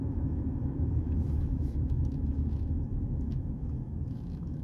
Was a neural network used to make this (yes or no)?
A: yes